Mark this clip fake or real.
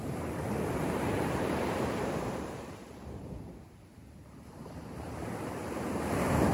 fake